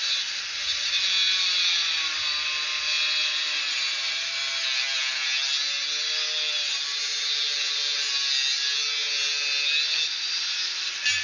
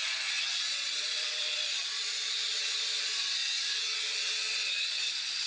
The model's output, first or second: second